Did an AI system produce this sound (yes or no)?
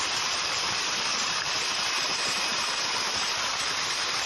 yes